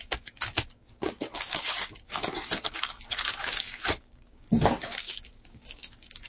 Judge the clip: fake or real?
fake